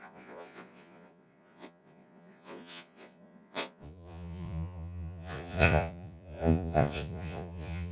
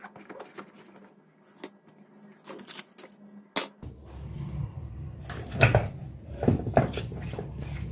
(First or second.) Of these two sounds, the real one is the second